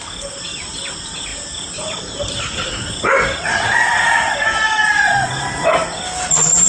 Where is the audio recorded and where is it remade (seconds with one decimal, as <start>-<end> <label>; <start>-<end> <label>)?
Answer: 0.0-6.7 recorded